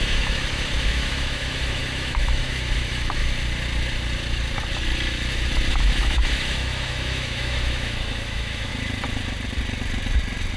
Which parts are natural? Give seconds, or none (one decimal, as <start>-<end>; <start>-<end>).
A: 3.2-5.7; 8.7-10.6